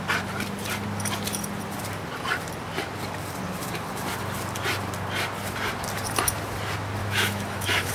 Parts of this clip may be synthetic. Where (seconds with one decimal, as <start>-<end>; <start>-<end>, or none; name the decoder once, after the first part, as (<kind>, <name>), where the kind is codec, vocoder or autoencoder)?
7.0-7.9 (autoencoder, DAC-VAE)